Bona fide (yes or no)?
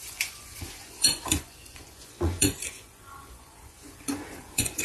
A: no